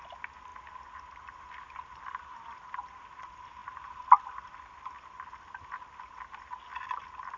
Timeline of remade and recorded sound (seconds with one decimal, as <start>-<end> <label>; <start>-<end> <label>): 0.0-7.4 recorded

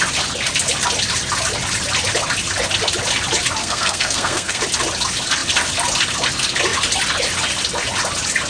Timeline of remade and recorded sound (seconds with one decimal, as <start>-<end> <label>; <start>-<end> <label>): 0.0-3.6 recorded; 3.6-4.6 remade; 4.6-8.5 recorded

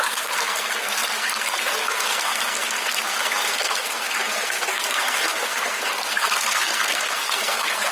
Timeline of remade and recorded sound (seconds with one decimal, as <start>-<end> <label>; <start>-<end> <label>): 0.0-7.9 remade

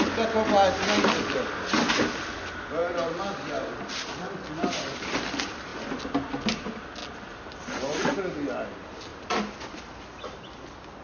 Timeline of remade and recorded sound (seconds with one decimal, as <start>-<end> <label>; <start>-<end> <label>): 0.0-11.0 recorded

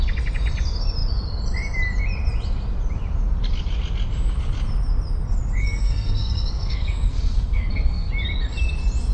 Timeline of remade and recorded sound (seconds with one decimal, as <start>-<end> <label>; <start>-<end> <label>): 0.0-5.6 recorded; 5.6-8.1 remade; 8.1-9.1 recorded

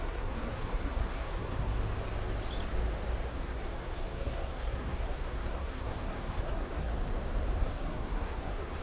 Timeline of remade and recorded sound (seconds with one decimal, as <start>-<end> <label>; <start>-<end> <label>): 0.0-1.8 remade; 1.8-3.3 recorded; 3.3-6.9 remade; 6.9-7.6 recorded; 7.6-8.8 remade

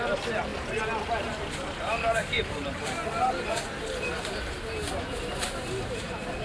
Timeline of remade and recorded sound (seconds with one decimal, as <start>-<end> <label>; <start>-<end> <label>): 0.0-6.4 recorded